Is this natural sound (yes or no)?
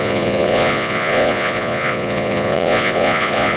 no